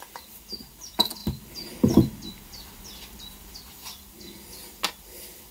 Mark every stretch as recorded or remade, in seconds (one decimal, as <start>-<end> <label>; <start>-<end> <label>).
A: 0.0-5.5 recorded

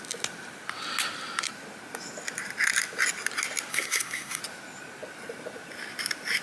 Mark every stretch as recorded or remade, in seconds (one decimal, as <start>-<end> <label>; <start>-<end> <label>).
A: 0.0-3.7 recorded; 3.7-4.4 remade; 4.4-6.4 recorded

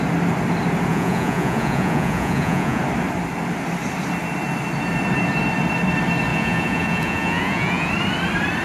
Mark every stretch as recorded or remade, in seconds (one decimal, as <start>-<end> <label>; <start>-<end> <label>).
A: 0.0-0.9 recorded; 0.9-2.8 remade; 2.8-6.3 recorded; 6.3-7.9 remade; 7.9-8.6 recorded

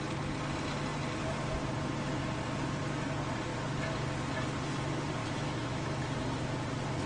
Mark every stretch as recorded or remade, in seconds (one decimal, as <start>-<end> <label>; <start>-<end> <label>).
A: 0.0-5.2 recorded; 5.2-6.0 remade; 6.0-7.1 recorded

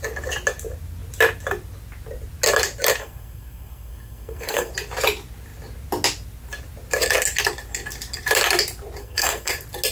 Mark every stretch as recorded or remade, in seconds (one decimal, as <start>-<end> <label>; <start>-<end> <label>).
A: 0.0-3.0 recorded; 3.0-4.7 remade; 4.7-9.0 recorded; 9.0-9.5 remade; 9.5-9.9 recorded

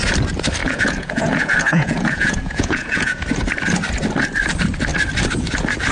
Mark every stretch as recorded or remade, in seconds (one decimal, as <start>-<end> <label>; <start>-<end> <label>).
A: 0.0-0.6 recorded; 0.6-3.2 remade; 3.2-5.9 recorded